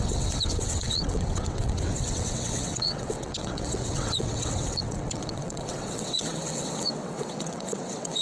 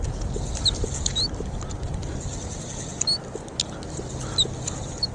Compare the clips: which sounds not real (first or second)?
first